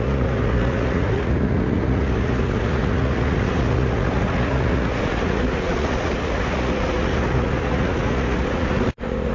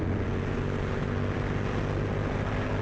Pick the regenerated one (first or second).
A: first